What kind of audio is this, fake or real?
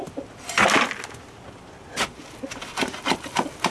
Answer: real